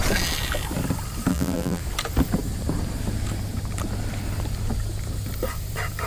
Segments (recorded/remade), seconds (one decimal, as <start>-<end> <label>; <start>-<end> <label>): 0.0-1.3 recorded; 1.3-1.8 remade; 1.8-6.1 recorded